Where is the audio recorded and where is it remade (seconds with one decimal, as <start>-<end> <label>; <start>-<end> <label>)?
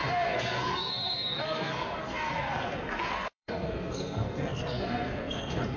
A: 0.0-5.8 remade